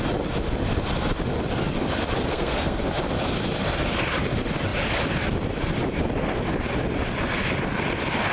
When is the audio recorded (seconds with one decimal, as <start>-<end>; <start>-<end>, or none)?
0.0-2.3; 2.8-8.3